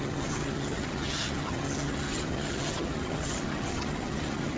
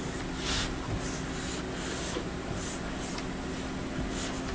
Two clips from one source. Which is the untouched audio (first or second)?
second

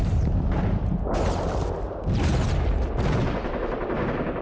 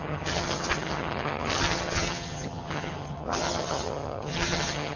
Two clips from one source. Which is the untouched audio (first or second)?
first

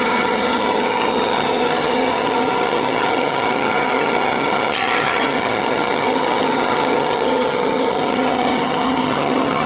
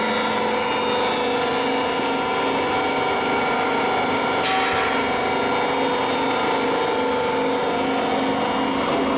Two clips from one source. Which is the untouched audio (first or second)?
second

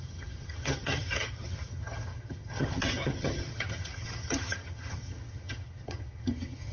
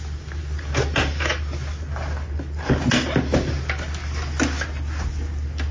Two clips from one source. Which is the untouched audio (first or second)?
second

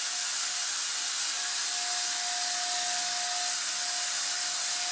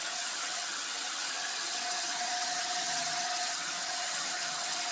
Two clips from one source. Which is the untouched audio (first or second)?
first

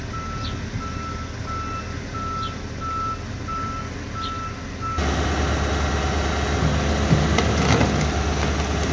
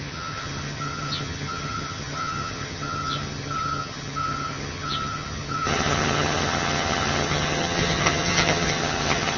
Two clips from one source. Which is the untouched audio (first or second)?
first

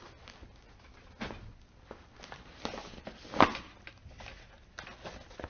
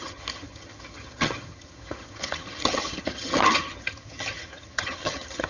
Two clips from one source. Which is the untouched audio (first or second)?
first